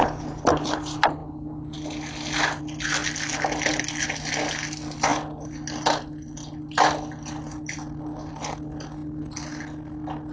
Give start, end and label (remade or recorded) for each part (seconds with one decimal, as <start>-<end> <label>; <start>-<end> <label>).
0.0-10.3 recorded